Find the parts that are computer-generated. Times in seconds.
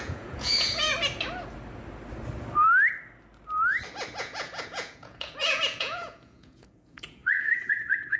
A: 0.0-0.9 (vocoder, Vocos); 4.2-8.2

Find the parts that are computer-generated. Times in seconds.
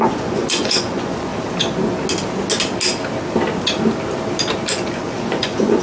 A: 0.0-1.3 (vocoder, Vocos); 4.7-5.8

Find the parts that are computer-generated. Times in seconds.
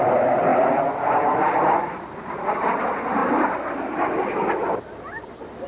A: none